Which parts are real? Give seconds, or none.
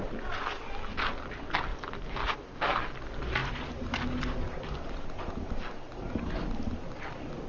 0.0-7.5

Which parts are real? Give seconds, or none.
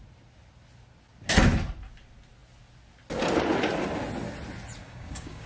0.0-4.8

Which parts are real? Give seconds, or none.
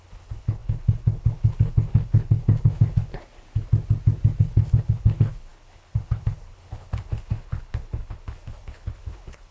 3.1-4.4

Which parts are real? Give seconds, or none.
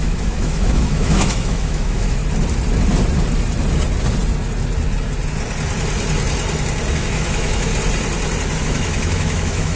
2.2-6.9; 7.7-8.6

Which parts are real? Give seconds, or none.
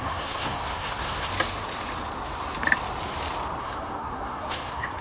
1.3-3.6